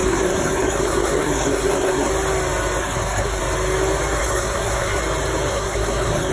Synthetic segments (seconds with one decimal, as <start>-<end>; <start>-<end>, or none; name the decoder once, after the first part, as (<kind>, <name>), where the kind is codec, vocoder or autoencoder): 0.0-2.1 (codec, SNAC); 2.8-3.4; 4.2-5.0; 5.5-6.3